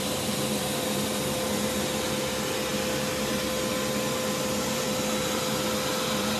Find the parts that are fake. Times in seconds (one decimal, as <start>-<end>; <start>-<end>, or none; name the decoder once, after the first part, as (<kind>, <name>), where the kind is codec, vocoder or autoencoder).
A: none